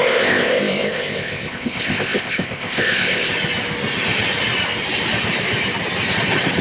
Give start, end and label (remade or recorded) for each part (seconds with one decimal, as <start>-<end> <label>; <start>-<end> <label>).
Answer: 0.0-3.3 remade; 3.3-6.6 recorded